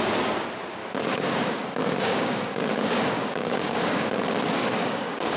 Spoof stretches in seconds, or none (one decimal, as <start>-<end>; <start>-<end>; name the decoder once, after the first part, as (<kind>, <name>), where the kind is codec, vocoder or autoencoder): 0.8-4.0 (codec, DAC); 4.6-5.4